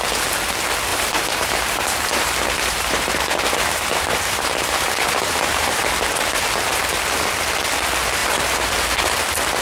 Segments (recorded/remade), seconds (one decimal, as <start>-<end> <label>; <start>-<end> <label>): 0.0-0.9 recorded; 0.9-5.9 remade; 5.9-8.2 recorded; 8.2-9.1 remade; 9.1-9.6 recorded